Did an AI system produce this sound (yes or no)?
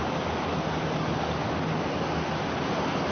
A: no